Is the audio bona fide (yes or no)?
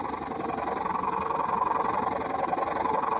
yes